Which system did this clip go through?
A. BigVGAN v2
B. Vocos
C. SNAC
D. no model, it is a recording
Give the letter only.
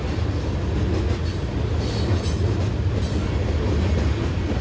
D